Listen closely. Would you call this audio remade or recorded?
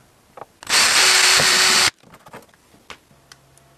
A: recorded